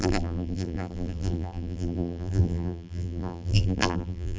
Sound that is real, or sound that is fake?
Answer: fake